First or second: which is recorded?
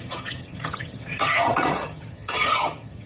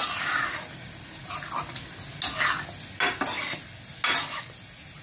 second